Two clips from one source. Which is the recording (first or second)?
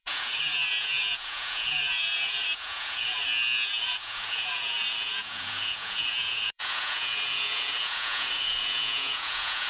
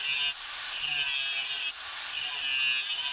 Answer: second